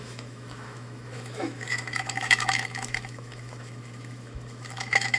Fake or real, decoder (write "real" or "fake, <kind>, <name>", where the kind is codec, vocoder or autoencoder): fake, autoencoder, DAC-VAE